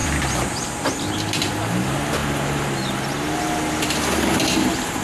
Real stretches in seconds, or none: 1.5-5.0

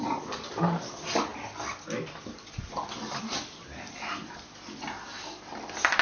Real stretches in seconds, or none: 0.0-6.0

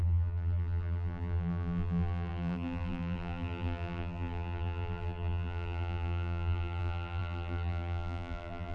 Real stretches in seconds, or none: none

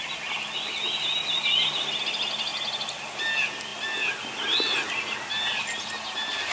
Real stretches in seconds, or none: 0.0-6.5

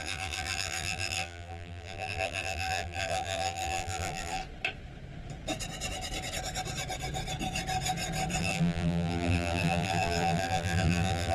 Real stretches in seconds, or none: 4.4-8.4

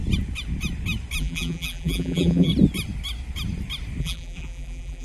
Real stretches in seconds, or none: 0.0-1.2; 2.5-4.0

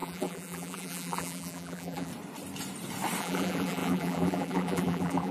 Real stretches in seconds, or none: 2.1-3.2